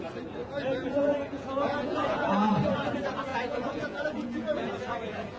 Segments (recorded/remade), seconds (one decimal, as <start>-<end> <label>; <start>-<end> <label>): 0.0-0.4 recorded; 0.4-2.5 remade; 2.5-3.3 recorded; 3.3-5.4 remade